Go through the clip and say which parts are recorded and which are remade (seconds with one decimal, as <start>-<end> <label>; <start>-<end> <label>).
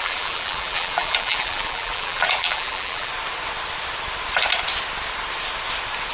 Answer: 0.0-3.1 remade; 3.1-6.1 recorded